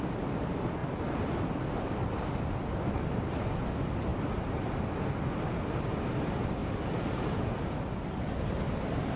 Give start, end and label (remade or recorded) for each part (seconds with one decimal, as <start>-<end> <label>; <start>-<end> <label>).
0.0-9.2 recorded